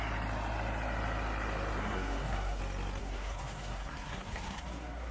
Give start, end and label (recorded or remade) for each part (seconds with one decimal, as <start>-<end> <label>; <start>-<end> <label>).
0.0-1.8 recorded; 1.8-2.6 remade; 2.6-3.0 recorded; 3.0-5.1 remade